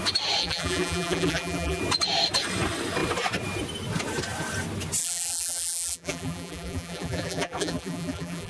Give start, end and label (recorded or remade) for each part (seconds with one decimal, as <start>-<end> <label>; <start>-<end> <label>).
0.0-0.4 recorded; 0.4-1.8 remade; 1.8-5.0 recorded; 5.0-8.5 remade